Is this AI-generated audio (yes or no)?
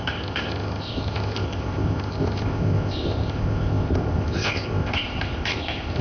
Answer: yes